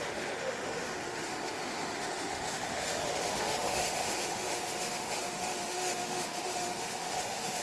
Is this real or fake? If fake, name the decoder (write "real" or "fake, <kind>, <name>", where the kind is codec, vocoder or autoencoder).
fake, autoencoder, DAC-VAE